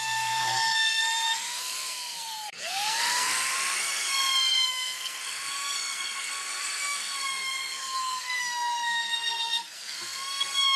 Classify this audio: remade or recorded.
remade